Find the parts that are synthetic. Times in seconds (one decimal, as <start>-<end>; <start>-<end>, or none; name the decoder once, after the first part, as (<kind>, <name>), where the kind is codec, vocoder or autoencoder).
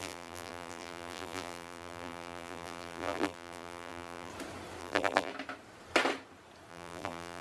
0.0-4.3 (vocoder, BigVGAN v2); 4.8-5.3; 6.7-7.4